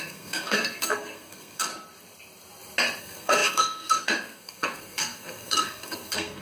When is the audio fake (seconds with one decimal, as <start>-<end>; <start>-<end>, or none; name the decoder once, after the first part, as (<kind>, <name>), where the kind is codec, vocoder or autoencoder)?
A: 0.0-1.7 (codec, SNAC); 3.0-6.4